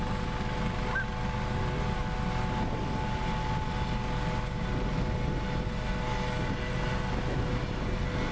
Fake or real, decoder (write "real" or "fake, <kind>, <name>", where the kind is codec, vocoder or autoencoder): real